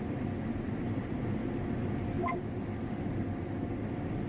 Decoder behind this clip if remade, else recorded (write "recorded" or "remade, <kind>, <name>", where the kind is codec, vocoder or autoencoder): recorded